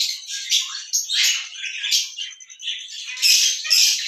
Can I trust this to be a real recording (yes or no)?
yes